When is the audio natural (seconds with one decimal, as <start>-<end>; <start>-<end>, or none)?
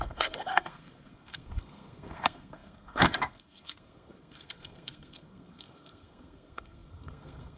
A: none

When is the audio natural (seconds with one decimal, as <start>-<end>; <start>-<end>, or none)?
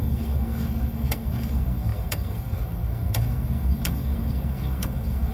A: none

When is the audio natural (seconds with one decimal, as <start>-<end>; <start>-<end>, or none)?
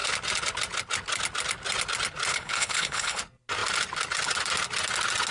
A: 0.0-2.3; 3.2-5.3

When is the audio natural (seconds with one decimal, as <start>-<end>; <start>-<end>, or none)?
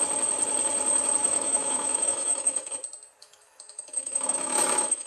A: 0.0-1.2; 2.7-3.2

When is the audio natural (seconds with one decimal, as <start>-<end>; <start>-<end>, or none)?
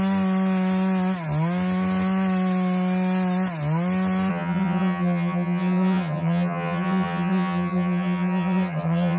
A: 0.0-4.3